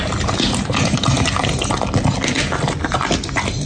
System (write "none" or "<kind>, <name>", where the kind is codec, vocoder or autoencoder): none